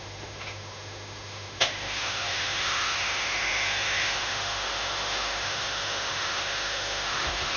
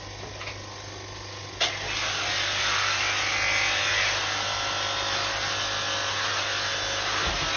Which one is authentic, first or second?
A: second